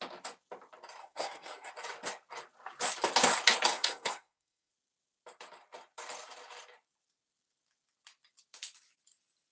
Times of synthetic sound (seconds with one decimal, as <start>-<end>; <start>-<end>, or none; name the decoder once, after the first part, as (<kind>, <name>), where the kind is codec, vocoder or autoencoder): 1.0-1.7 (codec, SNAC); 3.7-4.7